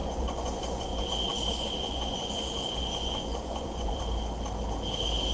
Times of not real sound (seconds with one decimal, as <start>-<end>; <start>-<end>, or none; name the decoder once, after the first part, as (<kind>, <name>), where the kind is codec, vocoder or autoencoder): 0.0-1.1 (vocoder, Vocos); 1.5-4.0